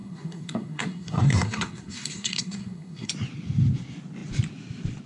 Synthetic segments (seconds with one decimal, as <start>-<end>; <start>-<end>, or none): 0.0-3.1